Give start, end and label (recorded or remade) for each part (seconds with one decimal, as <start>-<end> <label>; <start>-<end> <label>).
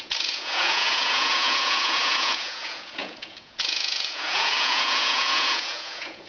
0.0-6.3 remade